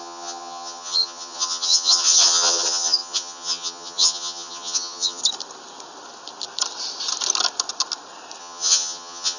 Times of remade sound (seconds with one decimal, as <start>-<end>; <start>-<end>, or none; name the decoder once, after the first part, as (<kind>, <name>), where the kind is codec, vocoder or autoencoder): 0.0-5.2 (vocoder, HiFi-GAN); 8.4-9.4